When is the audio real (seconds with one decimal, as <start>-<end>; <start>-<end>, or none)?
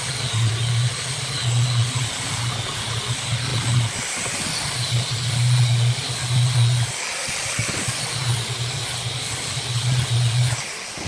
0.0-11.1